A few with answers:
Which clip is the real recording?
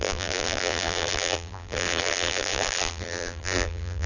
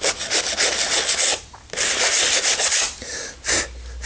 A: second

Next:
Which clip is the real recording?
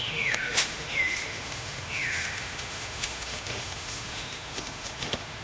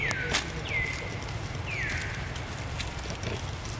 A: second